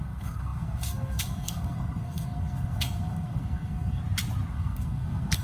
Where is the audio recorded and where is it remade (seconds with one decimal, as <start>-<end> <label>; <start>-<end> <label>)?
0.0-4.0 remade; 4.0-4.5 recorded; 4.5-5.4 remade